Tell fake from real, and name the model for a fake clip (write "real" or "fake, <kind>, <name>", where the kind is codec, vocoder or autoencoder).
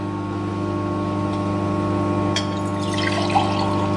real